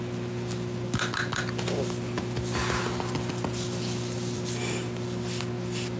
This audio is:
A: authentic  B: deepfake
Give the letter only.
A